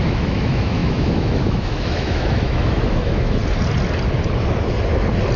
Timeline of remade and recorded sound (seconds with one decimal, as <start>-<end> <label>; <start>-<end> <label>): 0.0-3.4 remade; 3.4-5.4 recorded